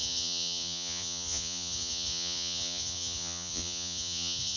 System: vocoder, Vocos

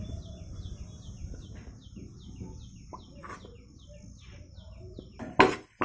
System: none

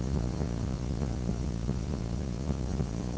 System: vocoder, Vocos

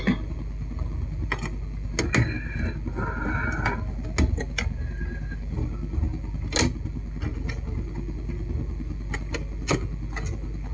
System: none